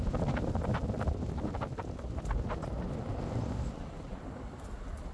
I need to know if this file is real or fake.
real